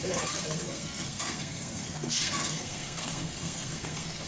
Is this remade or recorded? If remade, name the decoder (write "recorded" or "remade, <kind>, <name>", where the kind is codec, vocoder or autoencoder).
remade, codec, SNAC